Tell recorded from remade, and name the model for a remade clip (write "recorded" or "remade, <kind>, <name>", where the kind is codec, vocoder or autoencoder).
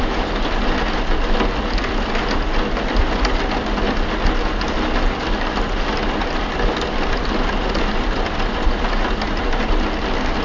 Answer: recorded